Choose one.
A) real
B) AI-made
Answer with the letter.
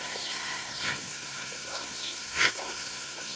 B